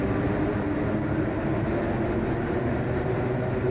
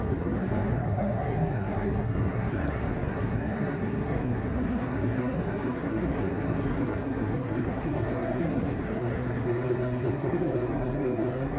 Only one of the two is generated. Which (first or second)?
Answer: second